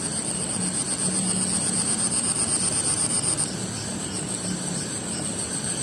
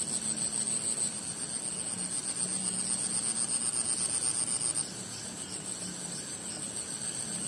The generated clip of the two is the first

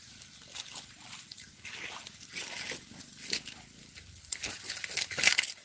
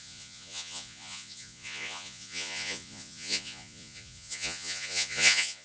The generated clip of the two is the second